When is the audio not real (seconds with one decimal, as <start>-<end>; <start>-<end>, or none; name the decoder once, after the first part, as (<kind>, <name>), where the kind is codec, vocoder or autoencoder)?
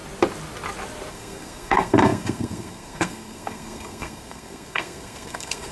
1.1-5.7 (codec, SNAC)